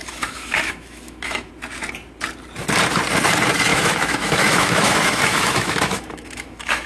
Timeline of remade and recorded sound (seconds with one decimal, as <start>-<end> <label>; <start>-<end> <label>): 0.0-1.5 remade; 1.5-3.7 recorded; 3.7-6.9 remade